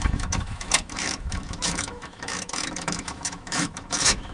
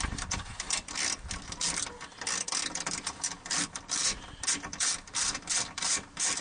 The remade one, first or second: first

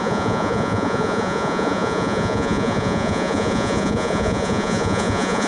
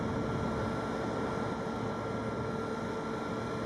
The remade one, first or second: first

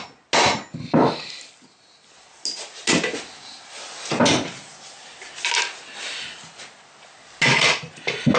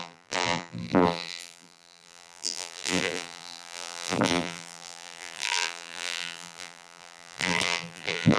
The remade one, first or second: second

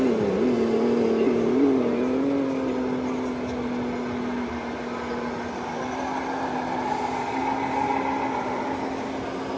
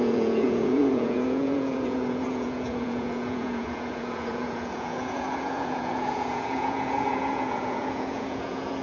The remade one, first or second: second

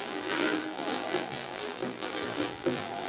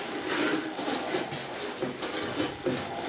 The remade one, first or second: first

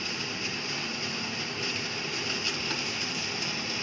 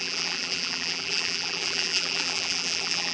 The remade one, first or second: second